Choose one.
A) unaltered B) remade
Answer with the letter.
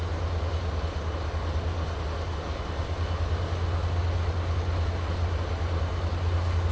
A